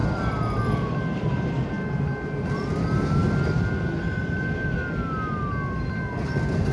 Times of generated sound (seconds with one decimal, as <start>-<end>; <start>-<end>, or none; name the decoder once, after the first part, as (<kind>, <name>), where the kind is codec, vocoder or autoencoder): none